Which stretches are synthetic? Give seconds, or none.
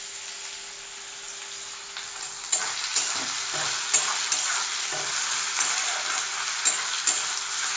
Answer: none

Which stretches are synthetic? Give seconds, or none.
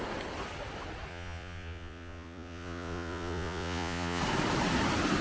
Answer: 1.1-4.2 (vocoder, Vocos)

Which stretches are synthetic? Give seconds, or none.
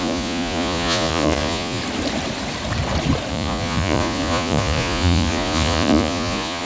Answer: 0.0-1.8 (vocoder, Vocos); 3.3-6.6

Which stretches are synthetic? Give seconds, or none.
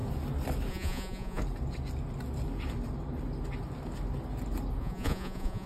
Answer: 0.7-1.4 (vocoder, Vocos); 4.8-5.7